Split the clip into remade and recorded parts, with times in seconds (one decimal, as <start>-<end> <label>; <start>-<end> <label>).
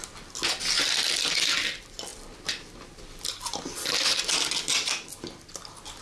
0.0-6.0 recorded